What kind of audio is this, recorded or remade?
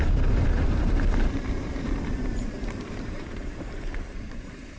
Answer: remade